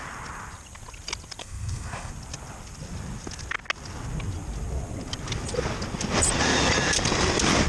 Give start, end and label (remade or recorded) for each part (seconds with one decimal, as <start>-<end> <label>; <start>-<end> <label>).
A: 0.0-1.4 recorded; 1.4-2.1 remade; 2.1-7.7 recorded